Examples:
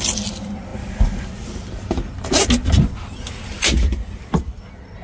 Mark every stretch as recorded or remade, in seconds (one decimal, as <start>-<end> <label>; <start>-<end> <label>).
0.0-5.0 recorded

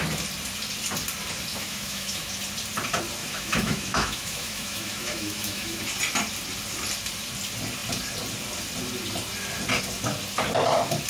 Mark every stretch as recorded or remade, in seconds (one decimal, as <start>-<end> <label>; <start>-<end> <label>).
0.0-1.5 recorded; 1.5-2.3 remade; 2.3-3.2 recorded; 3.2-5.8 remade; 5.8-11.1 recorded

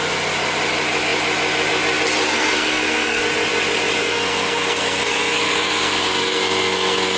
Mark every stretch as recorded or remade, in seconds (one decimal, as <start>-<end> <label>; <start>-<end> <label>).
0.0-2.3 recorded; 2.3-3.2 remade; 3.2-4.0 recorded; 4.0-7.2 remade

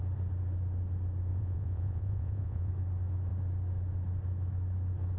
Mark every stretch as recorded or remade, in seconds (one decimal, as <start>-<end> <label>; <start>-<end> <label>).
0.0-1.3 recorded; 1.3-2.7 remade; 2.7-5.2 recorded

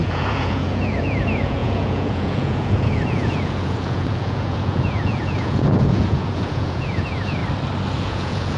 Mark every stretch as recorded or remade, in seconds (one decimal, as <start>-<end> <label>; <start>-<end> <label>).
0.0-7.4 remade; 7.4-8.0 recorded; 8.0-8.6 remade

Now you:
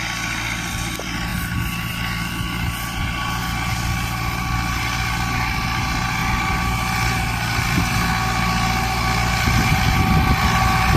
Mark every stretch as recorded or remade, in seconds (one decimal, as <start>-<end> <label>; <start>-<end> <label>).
0.0-6.2 recorded; 6.2-7.8 remade; 7.8-11.0 recorded